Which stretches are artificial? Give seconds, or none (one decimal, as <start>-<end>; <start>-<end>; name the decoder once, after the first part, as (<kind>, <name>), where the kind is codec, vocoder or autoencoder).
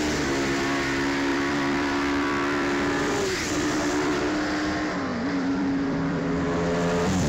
1.3-4.2 (vocoder, BigVGAN v2); 5.1-6.2